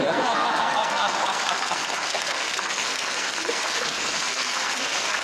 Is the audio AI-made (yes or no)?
yes